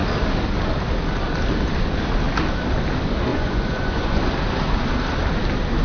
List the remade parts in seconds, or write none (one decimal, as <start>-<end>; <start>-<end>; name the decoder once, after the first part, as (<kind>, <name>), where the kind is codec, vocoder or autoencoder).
3.3-4.2 (vocoder, Vocos)